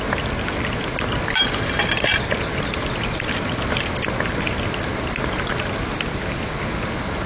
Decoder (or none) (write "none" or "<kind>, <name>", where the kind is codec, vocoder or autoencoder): none